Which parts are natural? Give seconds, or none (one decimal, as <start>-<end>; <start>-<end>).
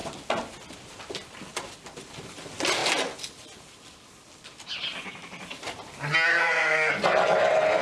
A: 0.0-6.3; 6.9-7.8